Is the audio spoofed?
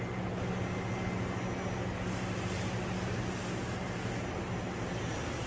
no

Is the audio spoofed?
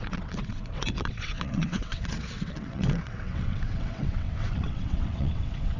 yes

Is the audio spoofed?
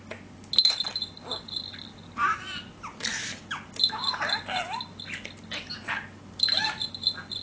no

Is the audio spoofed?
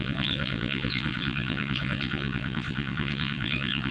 yes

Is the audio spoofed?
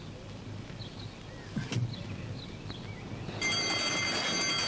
no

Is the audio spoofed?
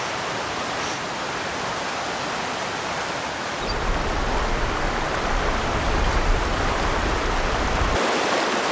no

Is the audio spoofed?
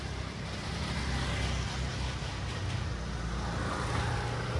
no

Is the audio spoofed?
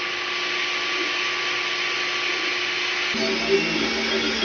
no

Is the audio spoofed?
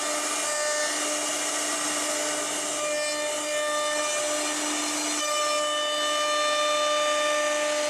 no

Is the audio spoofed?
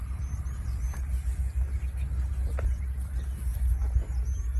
no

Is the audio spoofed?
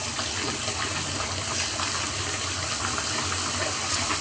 no